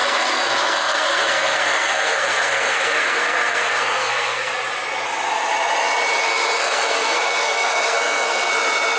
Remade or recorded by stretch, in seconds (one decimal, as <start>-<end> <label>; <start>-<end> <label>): 0.0-4.5 remade; 4.5-6.2 recorded; 6.2-8.5 remade; 8.5-9.0 recorded